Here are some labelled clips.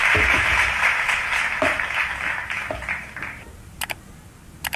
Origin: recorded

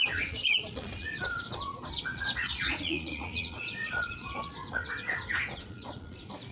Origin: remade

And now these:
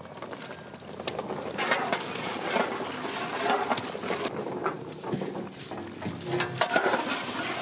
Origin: recorded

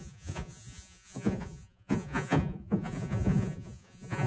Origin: remade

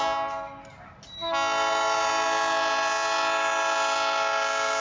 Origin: recorded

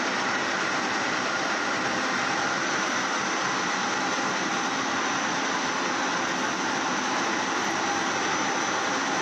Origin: recorded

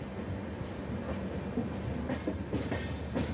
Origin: recorded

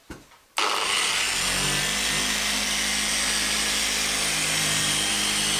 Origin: recorded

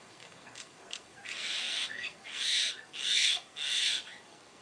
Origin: remade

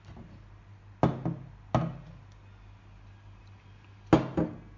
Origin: recorded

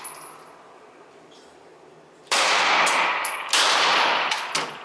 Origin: remade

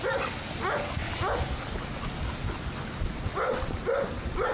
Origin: recorded